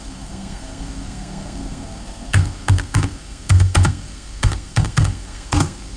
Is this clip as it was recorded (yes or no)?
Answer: no